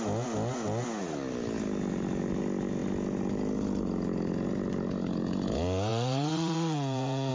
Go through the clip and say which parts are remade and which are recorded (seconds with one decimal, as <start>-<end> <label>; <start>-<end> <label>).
0.0-5.9 recorded; 5.9-7.3 remade